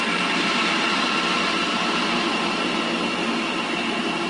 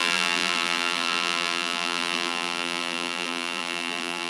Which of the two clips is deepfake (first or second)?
second